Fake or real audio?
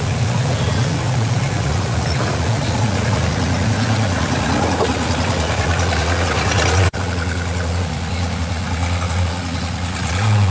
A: fake